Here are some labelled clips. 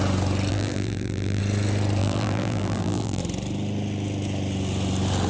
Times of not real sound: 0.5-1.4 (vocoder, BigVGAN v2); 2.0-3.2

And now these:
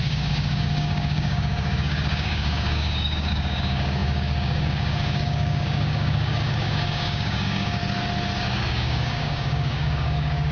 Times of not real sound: 0.0-7.8 (codec, DAC); 8.4-10.5

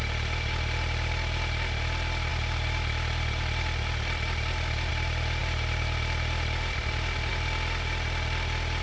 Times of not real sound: none

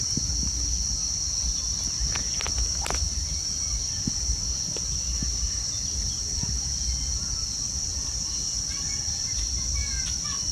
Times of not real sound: none